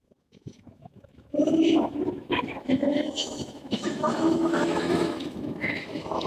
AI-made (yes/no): yes